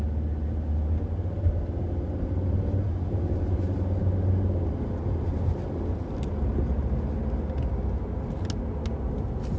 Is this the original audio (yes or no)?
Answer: yes